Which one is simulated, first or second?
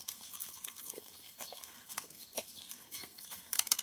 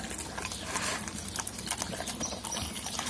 first